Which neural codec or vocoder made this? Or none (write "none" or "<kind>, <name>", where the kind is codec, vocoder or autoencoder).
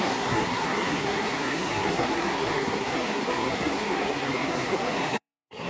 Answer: codec, SNAC